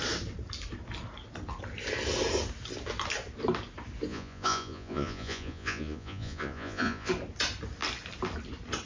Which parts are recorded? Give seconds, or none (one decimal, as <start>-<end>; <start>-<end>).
0.0-4.1; 7.1-8.9